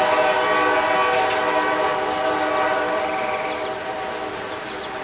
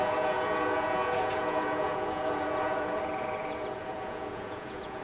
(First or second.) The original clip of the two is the first